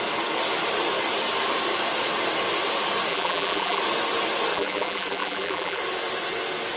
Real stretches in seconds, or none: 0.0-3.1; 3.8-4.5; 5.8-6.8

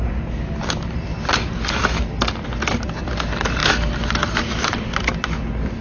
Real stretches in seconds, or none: 0.0-5.8

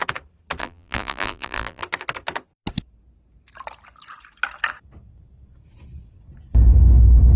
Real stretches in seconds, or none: 0.0-0.6; 1.8-7.4

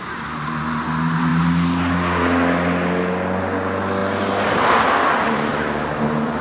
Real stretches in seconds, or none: 0.0-5.5

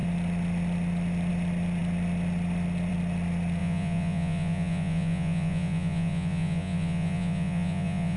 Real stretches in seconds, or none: 0.0-3.6

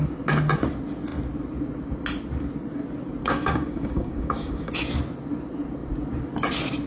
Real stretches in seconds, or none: 0.0-3.2; 4.7-6.9

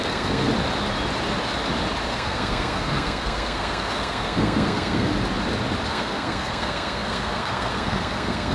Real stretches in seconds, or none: 0.5-2.1; 5.1-5.9